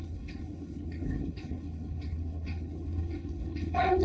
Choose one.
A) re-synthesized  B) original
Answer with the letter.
A